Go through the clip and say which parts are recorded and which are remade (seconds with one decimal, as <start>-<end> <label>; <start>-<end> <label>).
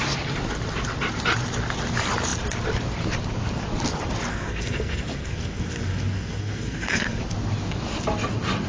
0.0-4.3 recorded; 4.3-7.2 remade; 7.2-8.7 recorded